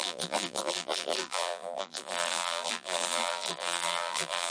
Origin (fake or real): fake